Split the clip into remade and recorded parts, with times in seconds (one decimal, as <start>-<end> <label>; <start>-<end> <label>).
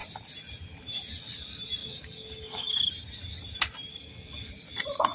0.0-1.8 recorded; 1.8-2.9 remade; 2.9-3.9 recorded; 3.9-4.5 remade; 4.5-5.1 recorded